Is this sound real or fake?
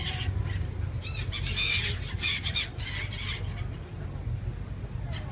real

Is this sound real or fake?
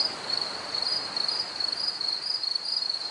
fake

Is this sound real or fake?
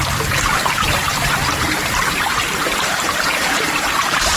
fake